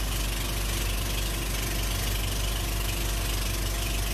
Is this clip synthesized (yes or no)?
no